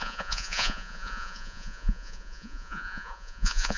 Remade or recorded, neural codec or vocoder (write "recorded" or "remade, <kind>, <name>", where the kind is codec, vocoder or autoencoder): remade, vocoder, Vocos